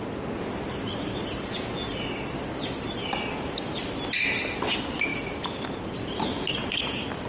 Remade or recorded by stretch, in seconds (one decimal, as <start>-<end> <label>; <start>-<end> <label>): 0.0-5.1 recorded; 5.1-5.9 remade; 5.9-7.3 recorded